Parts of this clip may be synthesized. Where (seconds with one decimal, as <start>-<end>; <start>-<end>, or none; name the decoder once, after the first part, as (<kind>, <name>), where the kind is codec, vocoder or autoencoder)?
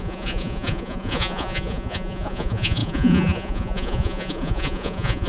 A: 0.0-5.3 (vocoder, Vocos)